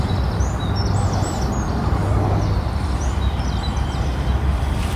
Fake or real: real